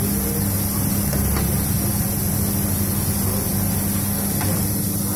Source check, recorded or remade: recorded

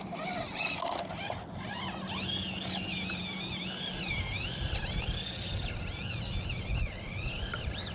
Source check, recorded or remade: recorded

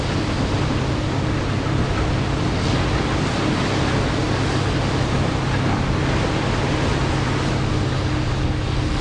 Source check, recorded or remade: recorded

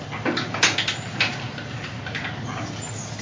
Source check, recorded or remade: recorded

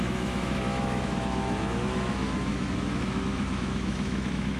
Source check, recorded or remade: remade